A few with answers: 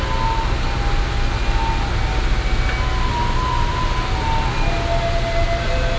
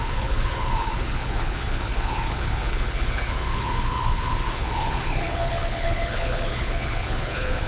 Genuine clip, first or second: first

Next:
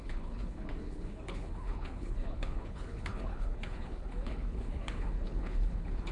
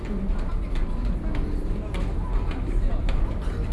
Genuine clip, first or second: second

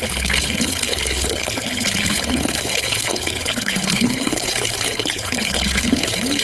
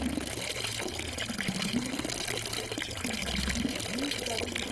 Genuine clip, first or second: second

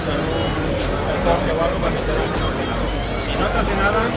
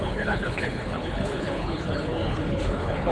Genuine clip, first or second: first